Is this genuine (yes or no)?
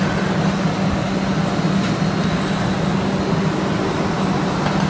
yes